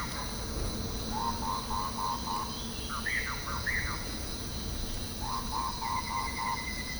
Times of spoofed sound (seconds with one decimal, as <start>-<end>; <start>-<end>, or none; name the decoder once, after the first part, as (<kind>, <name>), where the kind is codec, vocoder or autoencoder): 0.0-1.2 (vocoder, Vocos); 3.0-7.0